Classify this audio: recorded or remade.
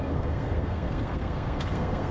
remade